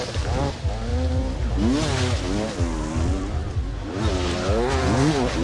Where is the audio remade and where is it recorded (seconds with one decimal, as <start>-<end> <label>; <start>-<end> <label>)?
0.0-5.4 recorded